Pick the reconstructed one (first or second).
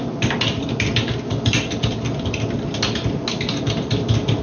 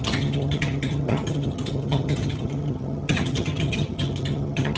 second